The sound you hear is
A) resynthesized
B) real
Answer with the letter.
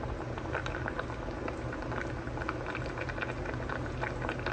B